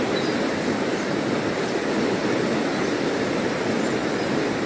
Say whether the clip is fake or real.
real